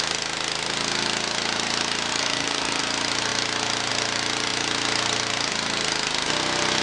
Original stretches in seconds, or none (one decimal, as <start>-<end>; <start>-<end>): 0.0-2.1; 2.8-6.8